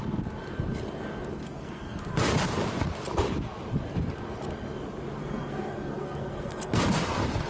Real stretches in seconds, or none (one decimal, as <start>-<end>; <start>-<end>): 0.0-1.4; 2.0-5.2; 6.8-7.5